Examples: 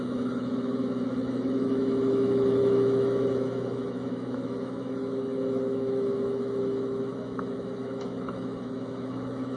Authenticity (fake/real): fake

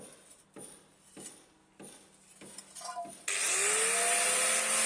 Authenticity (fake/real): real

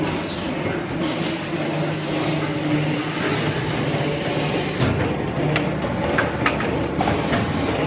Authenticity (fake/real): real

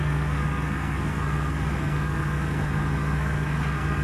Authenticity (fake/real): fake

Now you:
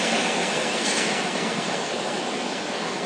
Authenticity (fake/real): fake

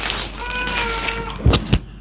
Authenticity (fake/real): real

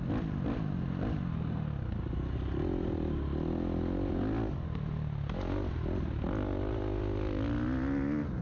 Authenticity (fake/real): real